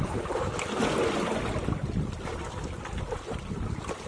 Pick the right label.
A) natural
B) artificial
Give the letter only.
A